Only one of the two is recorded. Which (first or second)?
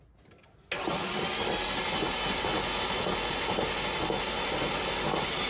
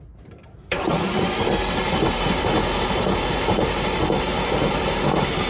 first